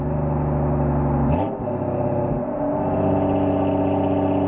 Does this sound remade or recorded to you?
recorded